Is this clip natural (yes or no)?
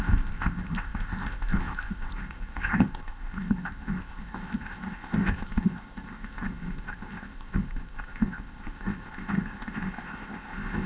no